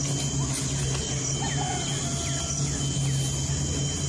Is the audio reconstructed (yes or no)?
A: no